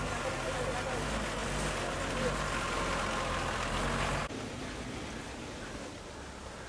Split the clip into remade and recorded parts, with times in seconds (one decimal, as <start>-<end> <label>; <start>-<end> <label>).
0.0-6.7 recorded